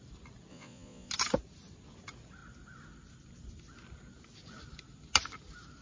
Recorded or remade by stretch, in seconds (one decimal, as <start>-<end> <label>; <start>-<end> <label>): 0.0-0.5 recorded; 0.5-1.1 remade; 1.1-5.8 recorded